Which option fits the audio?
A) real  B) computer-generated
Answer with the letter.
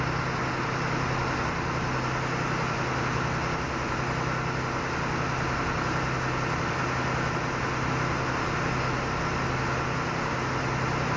A